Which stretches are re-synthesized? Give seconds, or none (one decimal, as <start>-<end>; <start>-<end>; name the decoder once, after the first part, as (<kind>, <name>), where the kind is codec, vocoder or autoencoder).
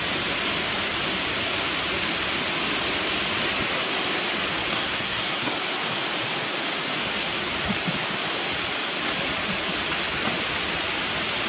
4.7-5.5 (codec, SNAC)